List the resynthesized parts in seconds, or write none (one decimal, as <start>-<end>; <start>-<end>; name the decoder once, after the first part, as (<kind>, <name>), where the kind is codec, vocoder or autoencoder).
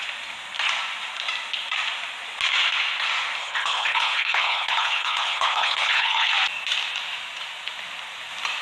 3.4-6.3 (codec, HILCodec)